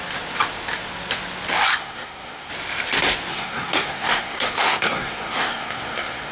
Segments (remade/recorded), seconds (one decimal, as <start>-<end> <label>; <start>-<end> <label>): 0.0-1.7 recorded; 1.7-2.5 remade; 2.5-3.3 recorded; 3.3-6.3 remade